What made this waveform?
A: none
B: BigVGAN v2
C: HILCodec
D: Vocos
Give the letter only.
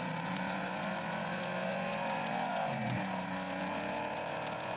D